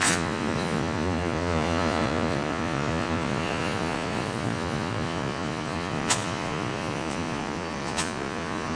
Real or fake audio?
fake